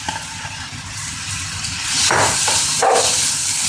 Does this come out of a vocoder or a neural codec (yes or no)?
no